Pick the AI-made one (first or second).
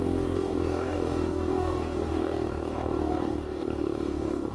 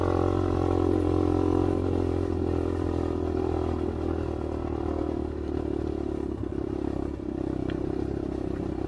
first